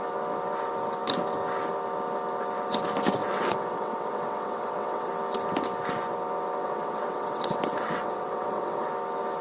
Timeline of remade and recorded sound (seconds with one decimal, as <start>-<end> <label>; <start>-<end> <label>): 0.0-3.2 recorded; 3.2-5.1 remade; 5.1-6.6 recorded; 6.6-8.9 remade; 8.9-9.4 recorded